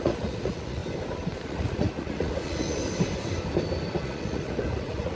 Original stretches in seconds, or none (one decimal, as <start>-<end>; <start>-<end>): 0.8-1.4; 2.8-3.9